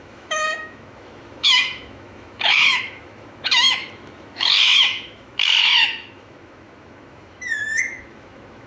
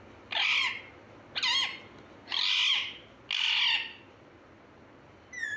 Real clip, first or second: second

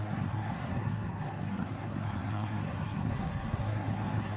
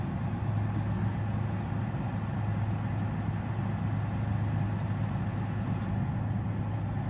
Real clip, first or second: second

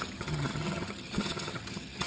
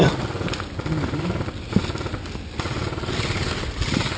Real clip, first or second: second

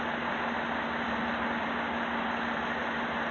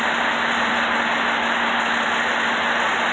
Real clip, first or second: second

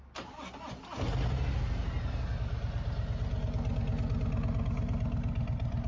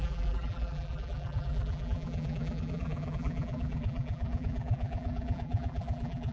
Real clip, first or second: first